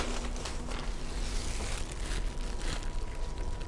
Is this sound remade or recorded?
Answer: recorded